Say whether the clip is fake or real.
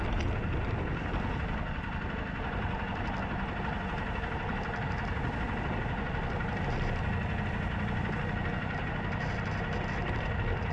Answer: real